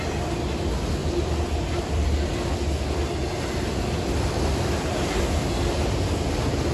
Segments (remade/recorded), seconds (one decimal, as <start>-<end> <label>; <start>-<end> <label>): 0.0-1.0 recorded; 1.0-5.0 remade; 5.0-6.7 recorded

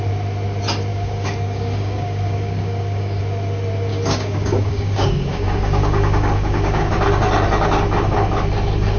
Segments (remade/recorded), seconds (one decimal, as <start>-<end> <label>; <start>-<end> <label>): 0.0-0.9 recorded; 0.9-3.2 remade; 3.2-3.9 recorded; 3.9-6.9 remade; 6.9-9.0 recorded

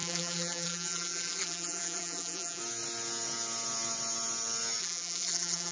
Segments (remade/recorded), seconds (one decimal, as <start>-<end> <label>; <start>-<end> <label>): 0.0-2.6 remade; 2.6-4.8 recorded; 4.8-5.7 remade

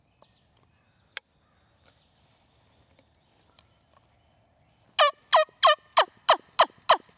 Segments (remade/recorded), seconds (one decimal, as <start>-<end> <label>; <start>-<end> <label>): 0.0-7.2 recorded